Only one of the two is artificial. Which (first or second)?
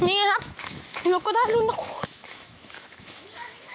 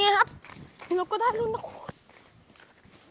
first